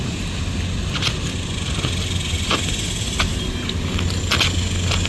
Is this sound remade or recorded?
recorded